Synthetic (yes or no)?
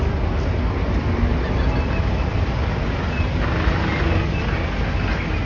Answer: no